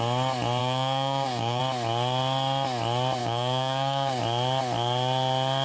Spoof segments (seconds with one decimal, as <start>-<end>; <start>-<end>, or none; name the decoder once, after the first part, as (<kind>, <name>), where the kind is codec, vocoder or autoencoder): 0.6-1.6 (codec, DAC); 3.2-4.2